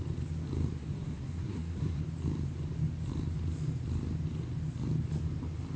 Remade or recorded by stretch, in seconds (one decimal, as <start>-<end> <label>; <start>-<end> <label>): 0.0-0.8 recorded; 0.8-2.0 remade; 2.0-5.8 recorded